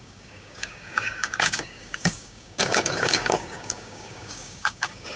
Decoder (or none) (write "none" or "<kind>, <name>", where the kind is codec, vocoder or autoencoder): codec, DAC